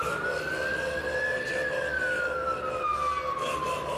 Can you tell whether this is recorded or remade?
recorded